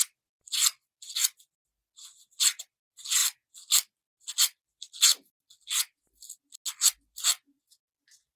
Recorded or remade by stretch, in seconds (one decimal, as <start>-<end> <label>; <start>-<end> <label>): 0.0-8.4 recorded